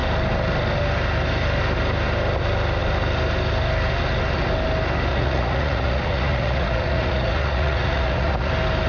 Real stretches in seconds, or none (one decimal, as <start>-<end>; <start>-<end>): 0.0-5.1; 8.5-8.9